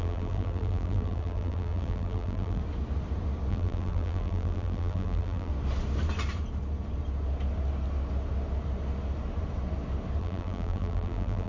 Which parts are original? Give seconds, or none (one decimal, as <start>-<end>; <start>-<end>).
2.6-3.5; 5.5-10.2